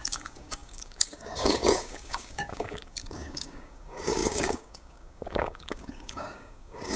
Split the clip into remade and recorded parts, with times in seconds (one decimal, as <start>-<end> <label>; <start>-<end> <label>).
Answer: 0.0-7.0 remade